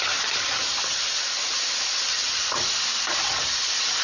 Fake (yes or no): no